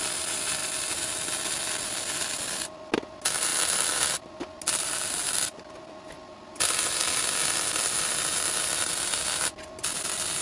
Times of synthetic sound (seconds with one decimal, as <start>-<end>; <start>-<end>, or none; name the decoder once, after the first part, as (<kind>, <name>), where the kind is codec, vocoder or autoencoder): none